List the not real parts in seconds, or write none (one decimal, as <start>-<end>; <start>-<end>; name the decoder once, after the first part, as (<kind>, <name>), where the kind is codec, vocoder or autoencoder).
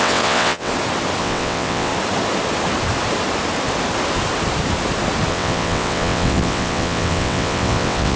0.0-0.7 (vocoder, WaveNeXt); 1.2-1.9; 5.3-8.2